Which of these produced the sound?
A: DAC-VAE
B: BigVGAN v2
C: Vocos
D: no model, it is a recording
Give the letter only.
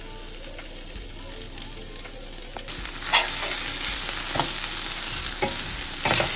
D